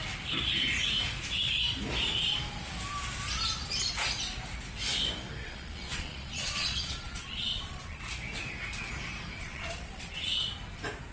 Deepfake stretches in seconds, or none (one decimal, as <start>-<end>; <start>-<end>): 5.4-8.0; 9.4-10.5